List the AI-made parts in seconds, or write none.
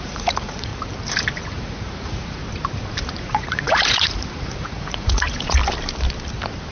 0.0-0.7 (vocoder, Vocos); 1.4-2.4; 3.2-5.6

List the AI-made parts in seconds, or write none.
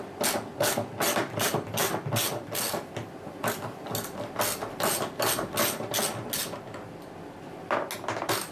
none